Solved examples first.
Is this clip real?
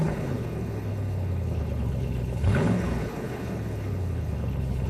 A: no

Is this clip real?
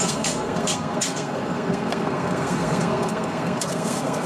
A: no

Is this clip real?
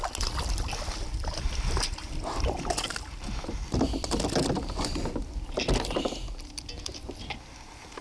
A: yes